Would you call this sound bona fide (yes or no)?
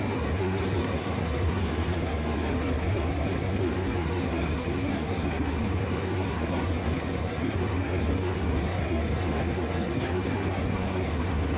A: no